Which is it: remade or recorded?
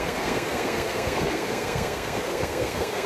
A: remade